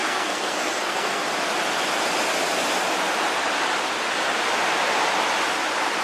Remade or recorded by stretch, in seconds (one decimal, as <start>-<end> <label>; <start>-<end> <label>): 0.0-1.2 remade; 1.2-6.0 recorded